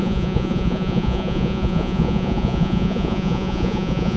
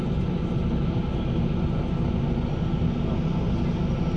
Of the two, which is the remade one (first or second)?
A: first